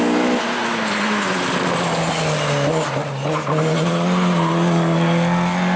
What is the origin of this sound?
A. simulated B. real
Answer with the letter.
B